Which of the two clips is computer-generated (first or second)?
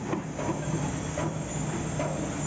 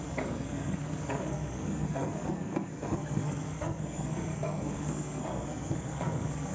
second